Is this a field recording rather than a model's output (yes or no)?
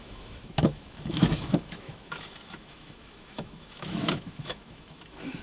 no